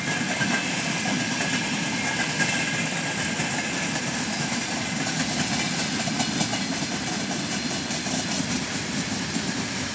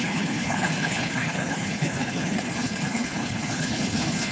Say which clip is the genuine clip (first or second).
first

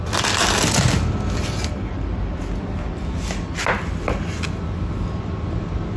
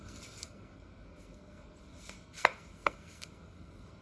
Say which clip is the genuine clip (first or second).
first